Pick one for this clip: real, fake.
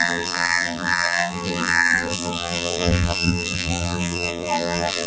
fake